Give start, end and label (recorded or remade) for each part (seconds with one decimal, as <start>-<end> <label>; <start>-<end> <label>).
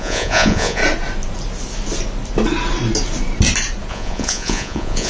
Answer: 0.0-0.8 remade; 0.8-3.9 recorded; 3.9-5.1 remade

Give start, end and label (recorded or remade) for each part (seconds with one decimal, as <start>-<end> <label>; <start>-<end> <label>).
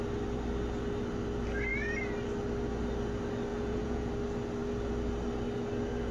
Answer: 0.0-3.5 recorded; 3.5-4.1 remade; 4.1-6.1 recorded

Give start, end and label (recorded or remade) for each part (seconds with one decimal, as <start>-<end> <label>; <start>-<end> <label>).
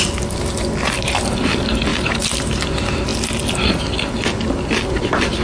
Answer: 0.0-1.9 recorded; 1.9-2.6 remade; 2.6-5.4 recorded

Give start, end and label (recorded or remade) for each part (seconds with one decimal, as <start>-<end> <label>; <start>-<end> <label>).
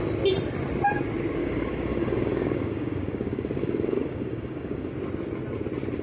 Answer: 0.0-1.4 recorded; 1.4-4.9 remade; 4.9-6.0 recorded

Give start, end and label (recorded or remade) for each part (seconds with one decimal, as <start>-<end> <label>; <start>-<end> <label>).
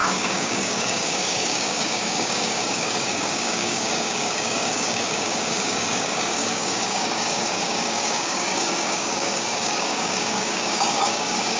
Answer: 0.0-11.6 remade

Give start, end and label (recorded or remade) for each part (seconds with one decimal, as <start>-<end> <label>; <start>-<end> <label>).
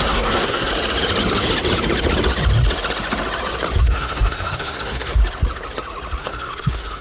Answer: 0.0-0.7 remade; 0.7-3.8 recorded; 3.8-5.2 remade; 5.2-6.2 recorded; 6.2-7.0 remade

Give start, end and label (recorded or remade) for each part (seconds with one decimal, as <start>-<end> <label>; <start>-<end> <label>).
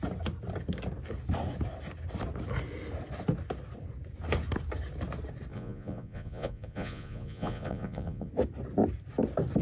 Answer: 0.0-5.5 recorded; 5.5-8.3 remade; 8.3-9.6 recorded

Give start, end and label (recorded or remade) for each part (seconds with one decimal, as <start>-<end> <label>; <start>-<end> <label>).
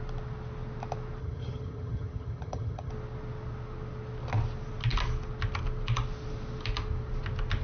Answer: 0.0-1.2 recorded; 1.2-2.9 remade; 2.9-7.6 recorded